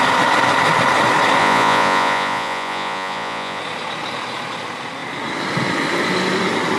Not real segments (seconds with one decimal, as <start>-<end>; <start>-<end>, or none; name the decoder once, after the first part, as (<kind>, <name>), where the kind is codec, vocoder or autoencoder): 1.4-3.6 (vocoder, Vocos)